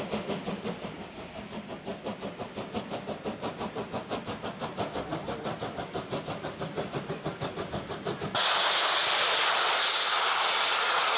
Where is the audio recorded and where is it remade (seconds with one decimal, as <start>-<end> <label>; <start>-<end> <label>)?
0.0-11.2 recorded